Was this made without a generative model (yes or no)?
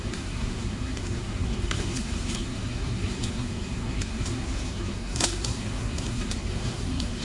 no